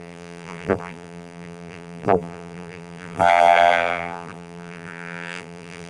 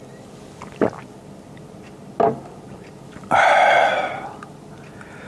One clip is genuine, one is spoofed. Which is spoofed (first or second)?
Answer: first